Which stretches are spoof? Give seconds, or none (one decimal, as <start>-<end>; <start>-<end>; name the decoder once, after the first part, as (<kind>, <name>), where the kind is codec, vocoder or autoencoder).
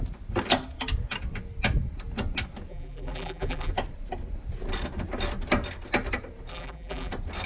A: 2.7-3.7 (vocoder, BigVGAN v2); 6.5-7.1